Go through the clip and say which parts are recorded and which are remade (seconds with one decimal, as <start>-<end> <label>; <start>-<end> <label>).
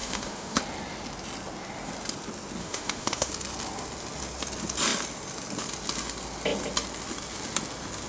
0.0-0.6 remade; 0.6-2.6 recorded; 2.6-3.3 remade; 3.3-8.1 recorded